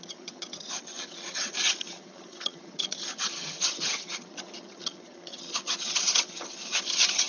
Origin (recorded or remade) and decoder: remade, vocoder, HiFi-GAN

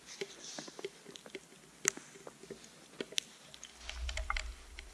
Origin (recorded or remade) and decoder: recorded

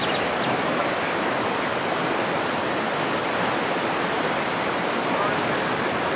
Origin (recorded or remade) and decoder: recorded